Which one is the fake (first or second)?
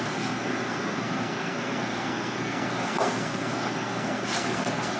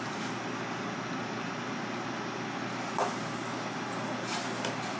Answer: first